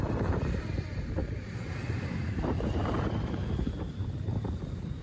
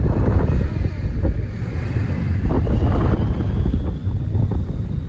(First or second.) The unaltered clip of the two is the second